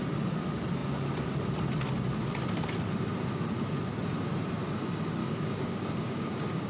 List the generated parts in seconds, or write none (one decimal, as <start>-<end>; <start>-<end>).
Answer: 5.2-6.7